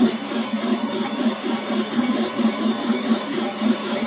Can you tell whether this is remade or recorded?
remade